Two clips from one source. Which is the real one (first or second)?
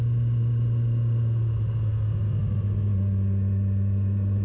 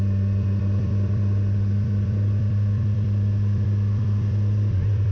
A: first